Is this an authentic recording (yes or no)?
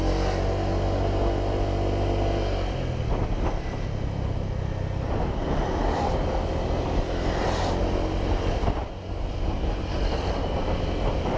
yes